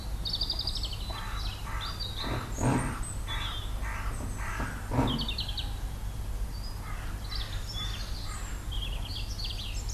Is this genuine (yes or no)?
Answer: yes